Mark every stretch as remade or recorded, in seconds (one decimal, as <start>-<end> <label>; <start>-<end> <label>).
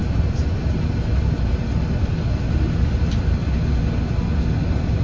0.0-5.0 recorded